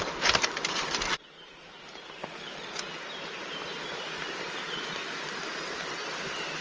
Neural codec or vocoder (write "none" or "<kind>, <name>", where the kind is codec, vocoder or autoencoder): none